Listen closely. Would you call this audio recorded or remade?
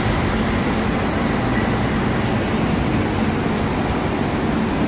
recorded